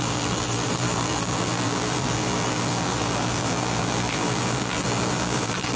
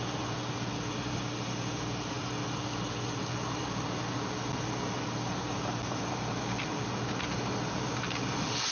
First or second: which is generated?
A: first